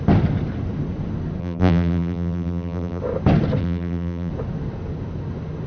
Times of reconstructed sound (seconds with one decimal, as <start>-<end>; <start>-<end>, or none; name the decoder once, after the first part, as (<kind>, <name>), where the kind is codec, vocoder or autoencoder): 1.4-3.0 (vocoder, BigVGAN v2); 3.6-4.3